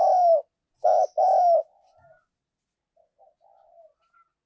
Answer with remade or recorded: recorded